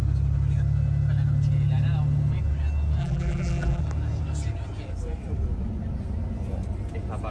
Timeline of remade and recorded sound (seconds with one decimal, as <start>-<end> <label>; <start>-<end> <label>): 0.0-3.0 recorded; 3.0-3.8 remade; 3.8-7.3 recorded